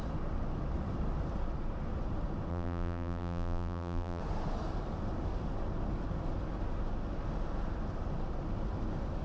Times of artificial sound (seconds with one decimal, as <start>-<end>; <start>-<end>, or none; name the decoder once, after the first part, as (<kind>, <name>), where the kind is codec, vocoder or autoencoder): 2.5-4.2 (vocoder, BigVGAN v2)

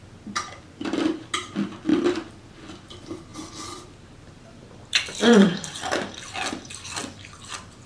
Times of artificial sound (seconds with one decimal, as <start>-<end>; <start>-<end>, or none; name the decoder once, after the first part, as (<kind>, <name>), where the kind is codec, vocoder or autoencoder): 3.3-6.1 (vocoder, BigVGAN v2)

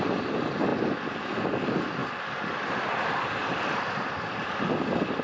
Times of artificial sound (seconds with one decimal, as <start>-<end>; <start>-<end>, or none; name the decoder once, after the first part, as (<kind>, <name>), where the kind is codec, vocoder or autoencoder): none

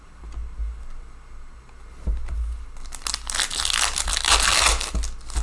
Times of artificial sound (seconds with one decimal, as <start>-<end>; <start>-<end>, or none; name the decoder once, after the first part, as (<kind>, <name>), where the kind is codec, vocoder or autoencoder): none

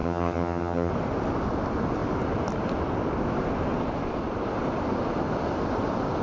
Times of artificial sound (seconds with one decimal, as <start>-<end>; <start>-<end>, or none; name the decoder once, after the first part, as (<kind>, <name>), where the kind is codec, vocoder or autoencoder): 0.0-0.9 (vocoder, HiFi-GAN)

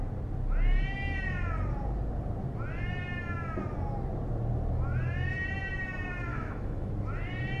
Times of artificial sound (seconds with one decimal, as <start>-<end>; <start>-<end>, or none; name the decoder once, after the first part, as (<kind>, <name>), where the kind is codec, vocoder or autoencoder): 6.3-6.9 (autoencoder, DAC-VAE)